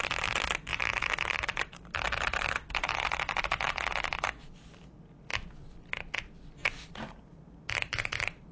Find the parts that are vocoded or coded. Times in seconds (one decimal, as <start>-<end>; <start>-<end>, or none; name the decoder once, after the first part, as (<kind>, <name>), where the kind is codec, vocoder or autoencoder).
0.7-3.4 (vocoder, BigVGAN v2); 6.9-7.6